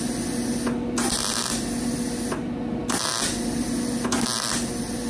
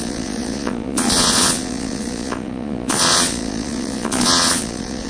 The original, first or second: first